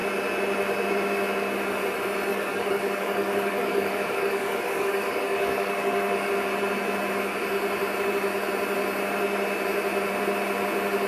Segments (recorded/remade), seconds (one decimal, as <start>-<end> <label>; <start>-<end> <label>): 0.0-2.3 recorded; 2.3-6.3 remade; 6.3-11.1 recorded